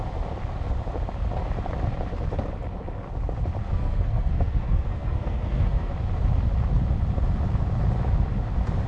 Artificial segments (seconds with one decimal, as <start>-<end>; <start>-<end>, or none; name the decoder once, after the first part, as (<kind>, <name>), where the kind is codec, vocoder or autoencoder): 3.6-5.9 (codec, SNAC)